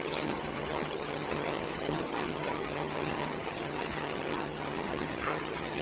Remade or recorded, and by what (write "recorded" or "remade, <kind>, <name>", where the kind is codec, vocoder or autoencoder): remade, vocoder, HiFi-GAN